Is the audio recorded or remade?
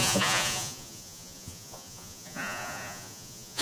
remade